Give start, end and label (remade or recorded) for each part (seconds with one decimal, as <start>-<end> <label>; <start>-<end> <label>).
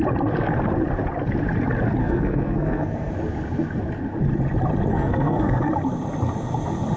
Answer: 0.0-2.0 recorded; 2.0-3.1 remade; 3.1-4.9 recorded; 4.9-5.7 remade; 5.7-7.0 recorded